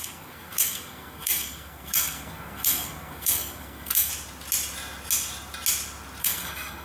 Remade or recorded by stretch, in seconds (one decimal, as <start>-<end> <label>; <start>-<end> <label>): 0.0-4.1 remade; 4.1-6.2 recorded; 6.2-6.8 remade